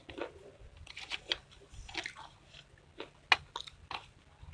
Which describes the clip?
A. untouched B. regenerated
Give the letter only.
A